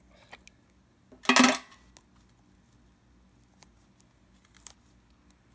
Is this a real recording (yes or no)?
yes